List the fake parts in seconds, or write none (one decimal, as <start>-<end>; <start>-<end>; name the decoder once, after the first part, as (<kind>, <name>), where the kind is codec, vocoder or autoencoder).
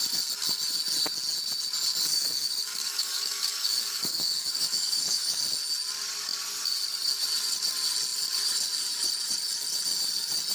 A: 2.1-5.4 (codec, DAC)